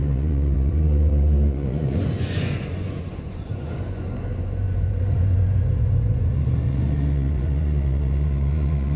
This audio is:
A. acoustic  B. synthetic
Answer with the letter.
B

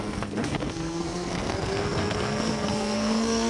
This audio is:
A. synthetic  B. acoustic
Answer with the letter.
A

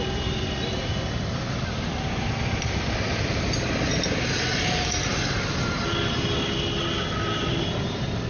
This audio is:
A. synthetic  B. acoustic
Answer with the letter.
B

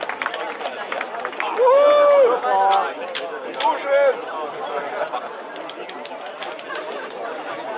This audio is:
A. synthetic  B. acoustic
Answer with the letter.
B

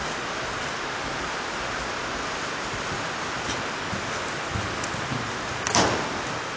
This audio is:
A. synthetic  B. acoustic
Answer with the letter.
B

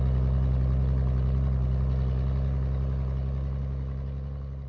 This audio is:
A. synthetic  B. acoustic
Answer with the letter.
B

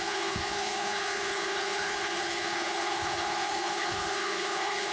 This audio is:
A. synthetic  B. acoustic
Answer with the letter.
A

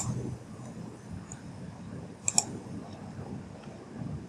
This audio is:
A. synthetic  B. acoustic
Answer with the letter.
B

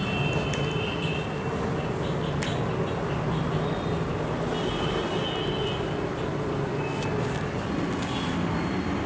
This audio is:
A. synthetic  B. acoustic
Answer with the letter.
B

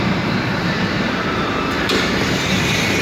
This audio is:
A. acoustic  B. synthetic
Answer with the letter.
B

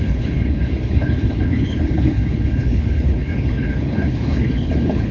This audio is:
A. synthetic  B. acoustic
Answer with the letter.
A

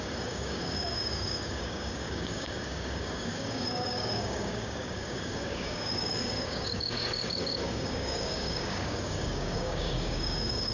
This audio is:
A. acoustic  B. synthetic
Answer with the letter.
B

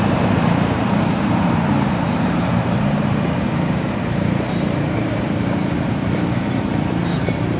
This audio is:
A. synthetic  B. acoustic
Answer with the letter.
A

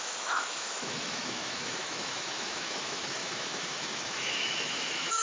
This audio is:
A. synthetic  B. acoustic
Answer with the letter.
A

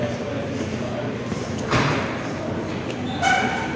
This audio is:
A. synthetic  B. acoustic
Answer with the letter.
B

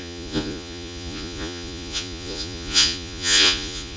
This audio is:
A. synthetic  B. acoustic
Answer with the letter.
A